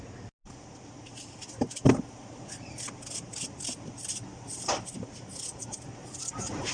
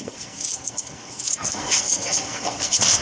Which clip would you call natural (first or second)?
first